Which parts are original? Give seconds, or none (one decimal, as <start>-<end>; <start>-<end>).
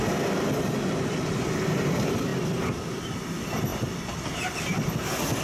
0.0-5.4